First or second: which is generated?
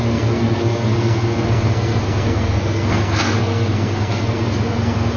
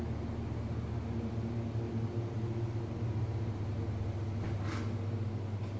first